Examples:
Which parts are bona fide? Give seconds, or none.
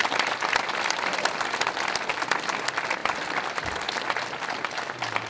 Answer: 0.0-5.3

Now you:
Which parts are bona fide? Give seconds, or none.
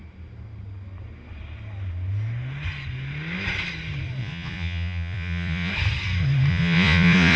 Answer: 0.0-4.2; 5.7-6.5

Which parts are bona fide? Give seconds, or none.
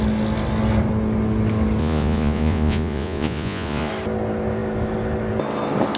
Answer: 0.0-1.8; 3.9-6.0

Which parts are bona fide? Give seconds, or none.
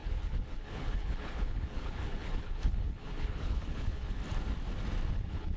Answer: 4.2-5.1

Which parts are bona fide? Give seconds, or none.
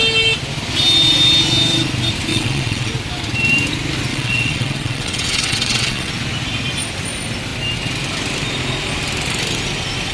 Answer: 0.0-2.3; 2.9-4.1; 6.1-10.1